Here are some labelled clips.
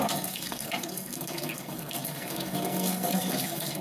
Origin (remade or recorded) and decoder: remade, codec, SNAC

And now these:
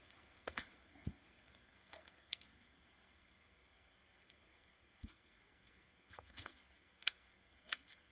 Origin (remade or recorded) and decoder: remade, codec, SNAC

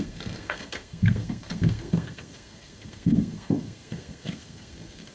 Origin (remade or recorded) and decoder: remade, codec, SNAC